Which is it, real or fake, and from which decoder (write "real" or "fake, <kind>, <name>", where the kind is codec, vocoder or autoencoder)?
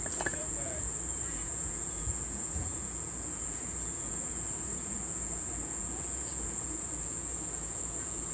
fake, vocoder, Vocos